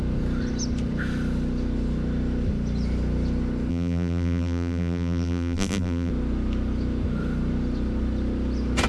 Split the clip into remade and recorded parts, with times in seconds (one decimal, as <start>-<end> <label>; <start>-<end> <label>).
0.0-3.7 recorded; 3.7-6.1 remade; 6.1-8.9 recorded